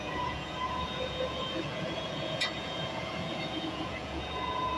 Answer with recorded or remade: remade